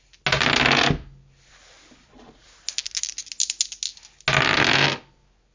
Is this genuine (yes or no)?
yes